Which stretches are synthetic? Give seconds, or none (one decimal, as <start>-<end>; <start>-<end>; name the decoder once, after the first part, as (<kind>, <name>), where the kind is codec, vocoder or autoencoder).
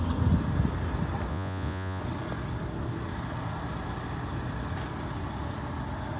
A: 1.3-2.0 (vocoder, Vocos)